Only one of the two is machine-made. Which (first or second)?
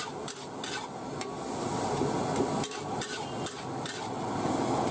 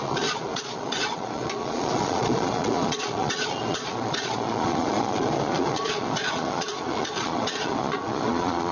second